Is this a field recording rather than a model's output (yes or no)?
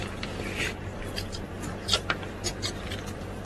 yes